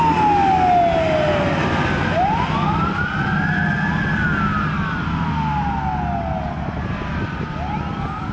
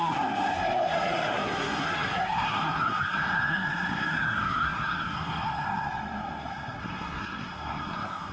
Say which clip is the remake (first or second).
second